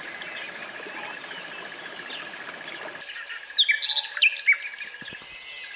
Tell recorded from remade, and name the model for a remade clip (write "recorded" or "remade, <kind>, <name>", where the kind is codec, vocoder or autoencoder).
recorded